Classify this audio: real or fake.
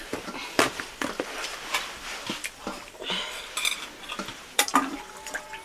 fake